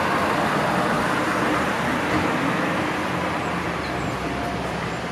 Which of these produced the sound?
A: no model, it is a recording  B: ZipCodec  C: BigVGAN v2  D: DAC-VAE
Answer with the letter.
A